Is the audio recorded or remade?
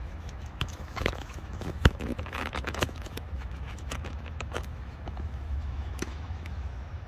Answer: remade